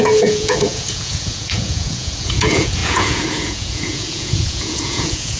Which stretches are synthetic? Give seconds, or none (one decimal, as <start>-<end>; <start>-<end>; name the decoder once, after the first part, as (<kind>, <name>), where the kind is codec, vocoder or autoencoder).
0.0-5.4 (vocoder, Vocos)